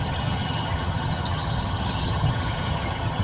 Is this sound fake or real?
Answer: fake